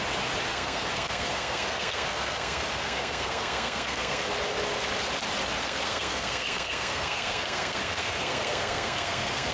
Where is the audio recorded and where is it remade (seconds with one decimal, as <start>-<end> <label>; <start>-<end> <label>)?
0.0-0.5 recorded; 0.5-4.3 remade; 4.3-5.6 recorded; 5.6-9.5 remade